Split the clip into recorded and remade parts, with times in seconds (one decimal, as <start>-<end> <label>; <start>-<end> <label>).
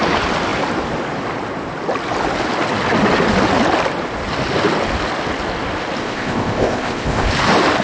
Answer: 0.0-6.0 recorded; 6.0-7.3 remade; 7.3-7.8 recorded